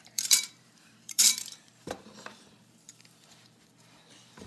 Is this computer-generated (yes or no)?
yes